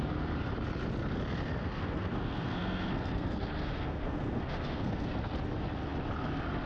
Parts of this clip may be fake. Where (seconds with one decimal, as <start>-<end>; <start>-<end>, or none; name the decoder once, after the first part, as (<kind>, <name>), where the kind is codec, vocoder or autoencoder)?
1.6-5.3 (codec, SNAC)